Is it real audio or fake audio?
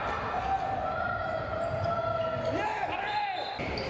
real